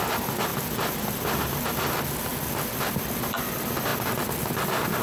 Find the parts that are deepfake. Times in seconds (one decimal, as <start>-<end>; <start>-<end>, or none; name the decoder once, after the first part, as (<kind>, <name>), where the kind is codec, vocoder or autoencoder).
none